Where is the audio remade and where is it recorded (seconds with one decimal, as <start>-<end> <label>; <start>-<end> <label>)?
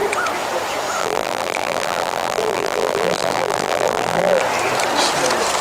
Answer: 0.0-1.0 recorded; 1.0-4.4 remade; 4.4-5.6 recorded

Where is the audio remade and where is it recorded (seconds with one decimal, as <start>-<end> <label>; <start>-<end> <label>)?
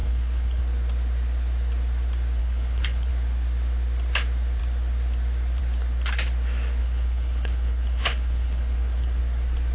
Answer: 0.0-0.6 remade; 0.6-2.4 recorded; 2.4-3.1 remade; 3.1-6.8 recorded; 6.8-9.2 remade; 9.2-9.7 recorded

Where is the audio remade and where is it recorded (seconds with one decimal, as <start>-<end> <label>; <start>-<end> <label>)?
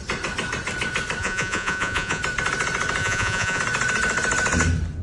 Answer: 0.0-1.2 recorded; 1.2-2.2 remade; 2.2-3.0 recorded; 3.0-3.6 remade; 3.6-5.0 recorded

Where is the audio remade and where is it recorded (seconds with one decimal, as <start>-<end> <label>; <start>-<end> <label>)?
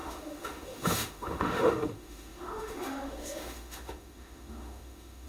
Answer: 0.0-5.3 remade